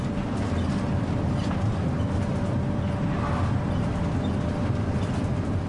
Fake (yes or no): no